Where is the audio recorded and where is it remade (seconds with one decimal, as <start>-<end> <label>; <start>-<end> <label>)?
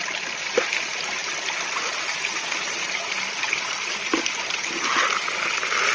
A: 0.0-5.9 recorded